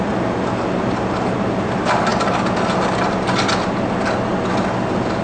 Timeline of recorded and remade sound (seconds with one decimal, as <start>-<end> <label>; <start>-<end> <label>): 0.0-5.2 recorded